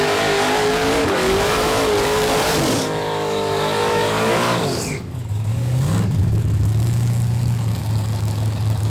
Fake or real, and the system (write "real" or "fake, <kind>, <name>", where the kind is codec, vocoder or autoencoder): fake, codec, DAC